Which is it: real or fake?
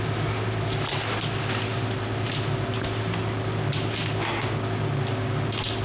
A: real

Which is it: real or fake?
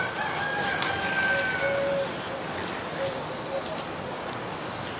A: real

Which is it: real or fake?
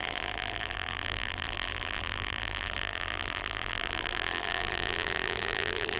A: fake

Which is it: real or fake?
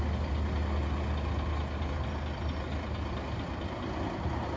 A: real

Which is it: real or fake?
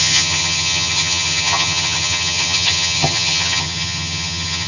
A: fake